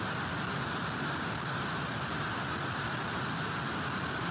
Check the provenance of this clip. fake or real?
real